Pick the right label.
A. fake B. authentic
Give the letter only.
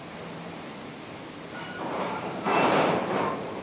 A